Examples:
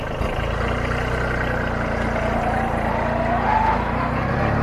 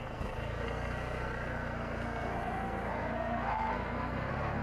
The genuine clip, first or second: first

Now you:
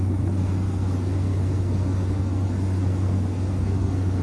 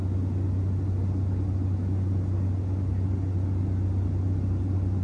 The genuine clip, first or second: second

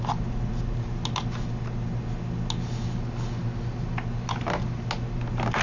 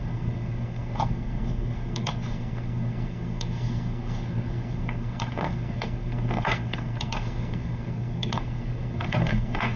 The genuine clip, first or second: first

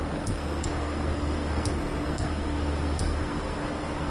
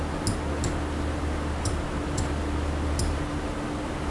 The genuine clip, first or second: second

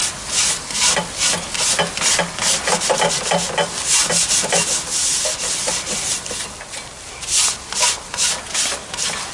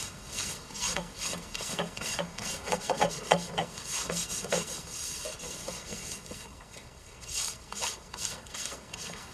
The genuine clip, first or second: first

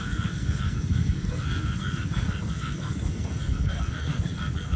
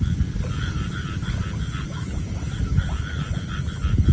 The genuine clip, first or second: second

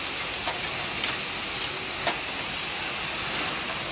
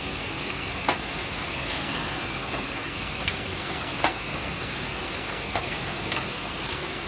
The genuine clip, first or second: first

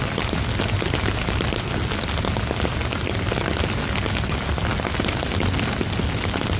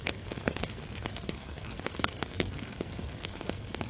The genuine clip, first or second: first